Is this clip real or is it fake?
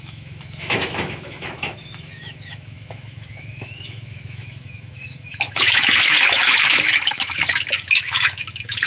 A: fake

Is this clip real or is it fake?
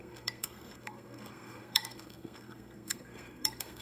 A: fake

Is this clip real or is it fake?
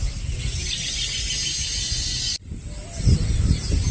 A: real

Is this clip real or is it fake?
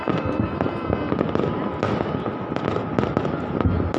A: real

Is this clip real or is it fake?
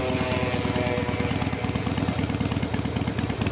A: real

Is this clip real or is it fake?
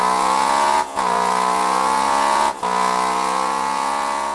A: fake